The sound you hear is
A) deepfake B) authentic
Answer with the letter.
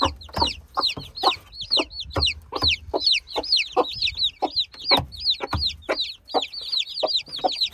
B